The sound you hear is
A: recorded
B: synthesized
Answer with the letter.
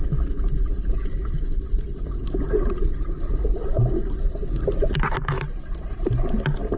A